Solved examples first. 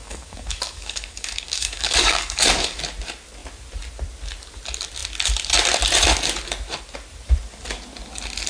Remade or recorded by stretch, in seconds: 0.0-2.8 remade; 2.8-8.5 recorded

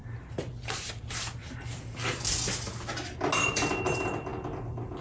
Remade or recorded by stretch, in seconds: 0.0-5.0 recorded

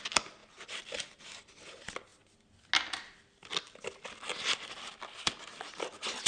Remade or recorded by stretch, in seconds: 0.0-6.3 recorded